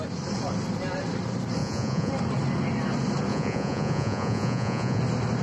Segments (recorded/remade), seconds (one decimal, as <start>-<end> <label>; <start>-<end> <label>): 0.0-1.6 recorded; 1.6-2.1 remade; 2.1-3.3 recorded; 3.3-5.0 remade; 5.0-5.4 recorded